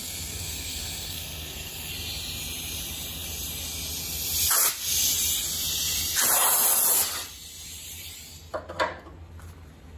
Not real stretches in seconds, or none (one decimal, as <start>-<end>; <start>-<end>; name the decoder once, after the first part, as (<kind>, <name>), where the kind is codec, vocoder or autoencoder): 0.0-1.9 (codec, SNAC)